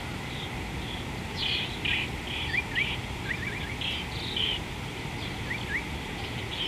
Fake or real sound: real